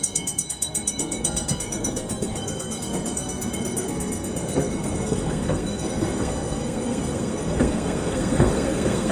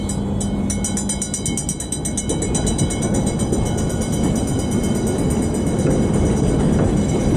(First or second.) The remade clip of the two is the first